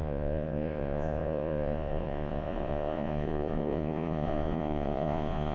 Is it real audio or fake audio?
fake